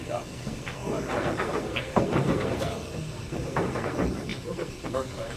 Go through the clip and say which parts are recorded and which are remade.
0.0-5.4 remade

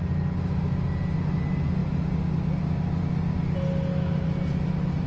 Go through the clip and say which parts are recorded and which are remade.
0.0-5.1 recorded

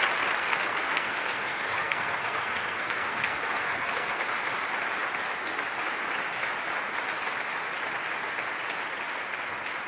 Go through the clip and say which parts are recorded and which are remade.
0.0-0.4 recorded; 0.4-4.2 remade; 4.2-9.9 recorded